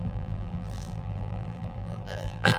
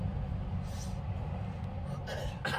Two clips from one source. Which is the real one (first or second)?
second